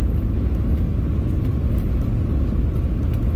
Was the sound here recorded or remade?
recorded